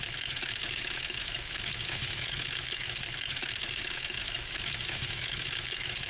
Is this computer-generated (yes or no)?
yes